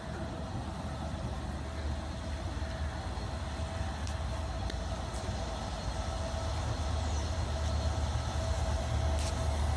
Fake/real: real